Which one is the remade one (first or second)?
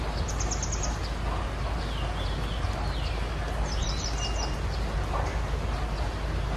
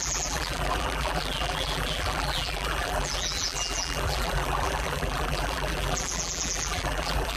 second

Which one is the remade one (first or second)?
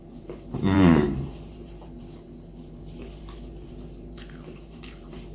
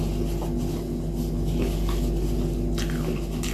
first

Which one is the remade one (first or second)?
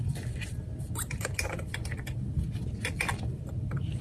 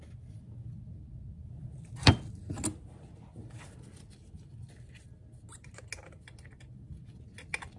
first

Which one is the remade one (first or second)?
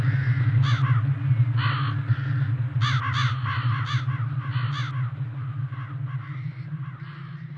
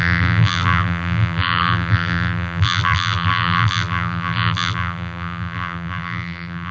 second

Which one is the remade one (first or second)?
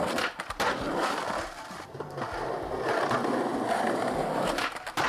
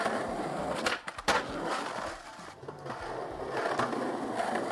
first